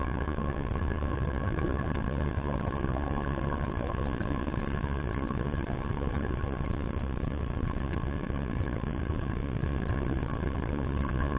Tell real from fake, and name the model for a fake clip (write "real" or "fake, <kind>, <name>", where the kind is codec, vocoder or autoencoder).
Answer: fake, vocoder, WaveNeXt